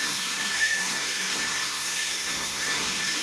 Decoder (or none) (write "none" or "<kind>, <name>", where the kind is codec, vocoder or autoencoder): codec, SNAC